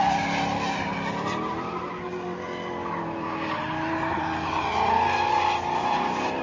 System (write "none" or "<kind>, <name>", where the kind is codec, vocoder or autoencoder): none